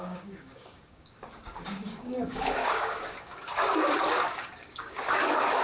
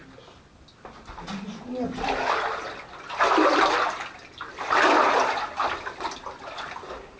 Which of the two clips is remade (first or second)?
first